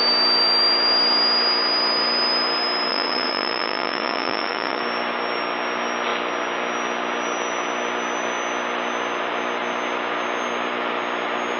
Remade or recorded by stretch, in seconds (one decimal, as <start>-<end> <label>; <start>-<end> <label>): 0.0-2.9 recorded; 2.9-4.8 remade; 4.8-11.6 recorded